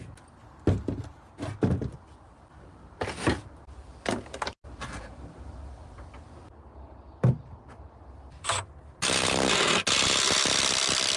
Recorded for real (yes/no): yes